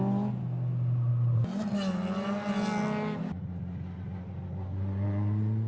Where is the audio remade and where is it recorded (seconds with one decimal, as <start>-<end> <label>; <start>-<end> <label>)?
0.0-5.7 recorded